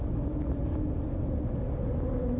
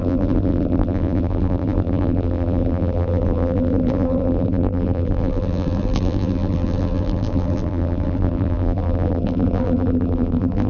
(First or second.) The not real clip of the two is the second